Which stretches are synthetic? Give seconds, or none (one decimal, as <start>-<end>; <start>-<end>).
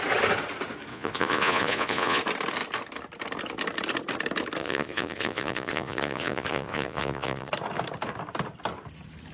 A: 0.9-2.2; 4.6-7.5